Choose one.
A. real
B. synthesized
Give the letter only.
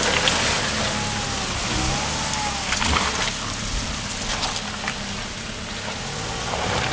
A